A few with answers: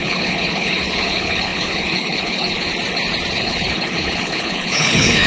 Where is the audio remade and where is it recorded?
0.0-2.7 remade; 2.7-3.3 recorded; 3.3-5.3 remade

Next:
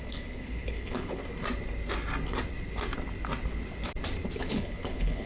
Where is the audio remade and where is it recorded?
0.0-1.2 remade; 1.2-4.4 recorded; 4.4-5.3 remade

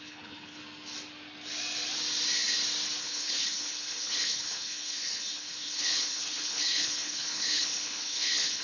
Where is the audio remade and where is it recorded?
0.0-0.6 remade; 0.6-3.0 recorded; 3.0-8.6 remade

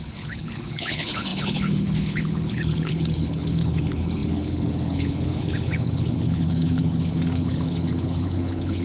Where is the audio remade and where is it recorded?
0.0-8.8 remade

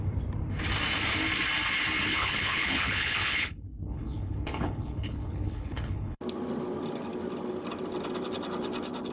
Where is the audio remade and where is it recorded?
0.0-2.1 recorded; 2.1-6.2 remade; 6.2-9.1 recorded

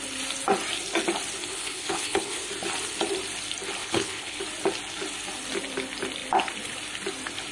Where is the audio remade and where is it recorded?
0.0-1.5 recorded; 1.5-2.5 remade; 2.5-3.8 recorded; 3.8-4.4 remade; 4.4-7.5 recorded

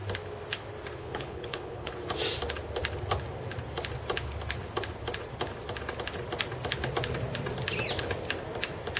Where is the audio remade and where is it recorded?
0.0-1.0 recorded; 1.0-1.9 remade; 1.9-9.0 recorded

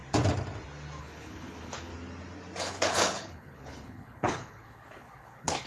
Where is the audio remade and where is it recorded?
0.0-1.0 recorded; 1.0-1.9 remade; 1.9-2.6 recorded; 2.6-5.7 remade